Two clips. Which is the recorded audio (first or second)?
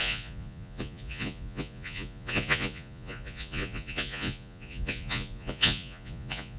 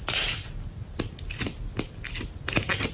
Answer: second